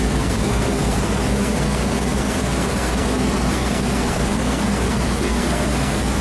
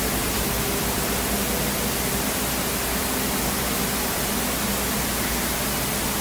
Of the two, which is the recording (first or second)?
second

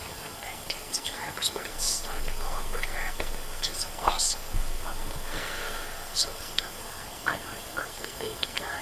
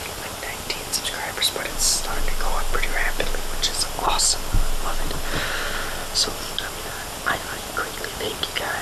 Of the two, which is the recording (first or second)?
second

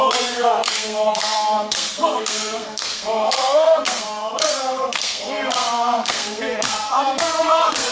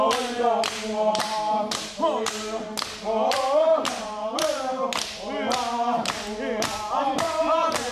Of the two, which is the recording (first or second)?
second